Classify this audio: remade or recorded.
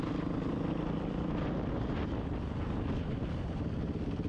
recorded